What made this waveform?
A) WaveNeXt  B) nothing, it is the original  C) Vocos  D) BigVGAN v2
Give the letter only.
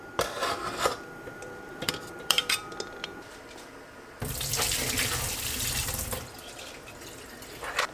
D